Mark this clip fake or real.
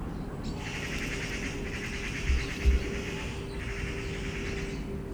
real